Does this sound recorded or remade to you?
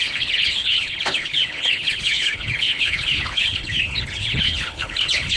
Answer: remade